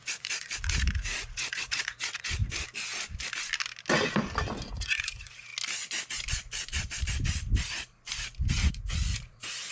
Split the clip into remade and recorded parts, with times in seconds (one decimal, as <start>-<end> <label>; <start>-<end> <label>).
0.0-2.4 remade; 2.4-4.7 recorded; 4.7-5.5 remade; 5.5-8.7 recorded; 8.7-9.7 remade